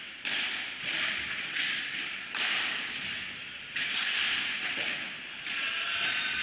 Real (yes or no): yes